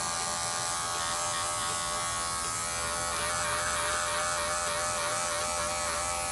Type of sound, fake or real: real